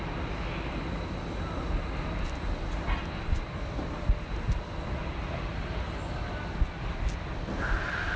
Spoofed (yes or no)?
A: no